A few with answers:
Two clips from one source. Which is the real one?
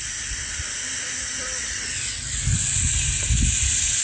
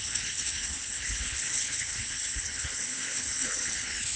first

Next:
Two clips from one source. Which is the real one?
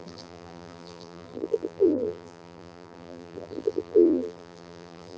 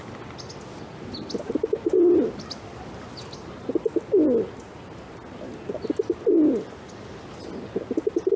second